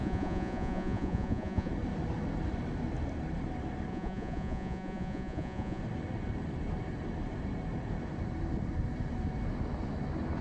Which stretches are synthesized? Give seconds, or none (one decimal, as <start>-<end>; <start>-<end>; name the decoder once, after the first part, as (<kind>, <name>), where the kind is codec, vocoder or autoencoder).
0.0-1.7 (vocoder, Vocos); 3.9-5.8